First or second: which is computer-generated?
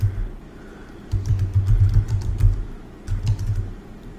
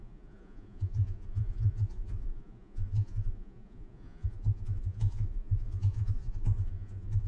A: second